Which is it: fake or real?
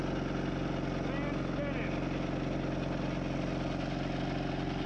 real